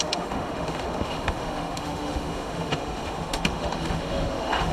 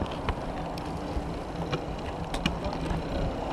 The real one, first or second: second